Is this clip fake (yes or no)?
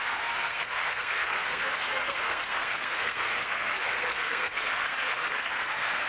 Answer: yes